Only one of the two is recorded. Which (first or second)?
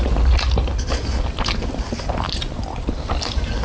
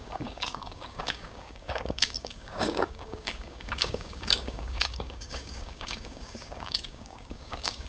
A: first